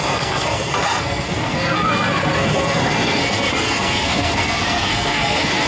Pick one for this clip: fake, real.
fake